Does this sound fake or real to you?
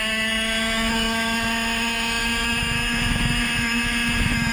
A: fake